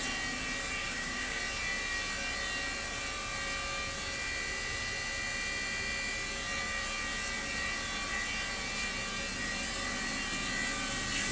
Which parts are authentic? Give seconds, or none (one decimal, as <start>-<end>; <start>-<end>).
0.0-0.8; 1.4-11.3